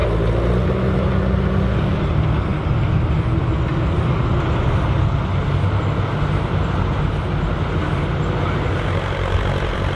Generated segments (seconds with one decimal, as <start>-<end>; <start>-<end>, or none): none